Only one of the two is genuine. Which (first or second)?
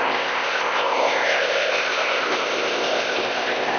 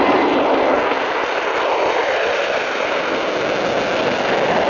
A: second